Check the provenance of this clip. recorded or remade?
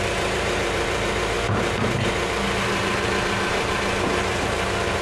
remade